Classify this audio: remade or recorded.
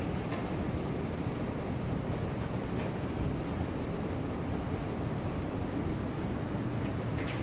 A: remade